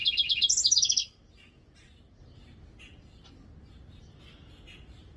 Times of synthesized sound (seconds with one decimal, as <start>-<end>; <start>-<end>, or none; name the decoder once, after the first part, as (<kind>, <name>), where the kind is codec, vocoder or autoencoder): none